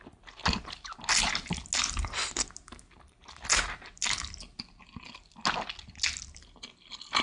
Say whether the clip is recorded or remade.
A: recorded